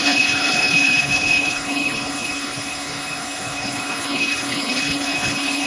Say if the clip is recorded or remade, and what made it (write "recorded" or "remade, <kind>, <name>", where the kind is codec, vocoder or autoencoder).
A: remade, codec, HILCodec